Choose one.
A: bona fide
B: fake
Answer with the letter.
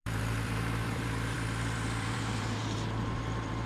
B